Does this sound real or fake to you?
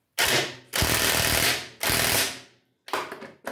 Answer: real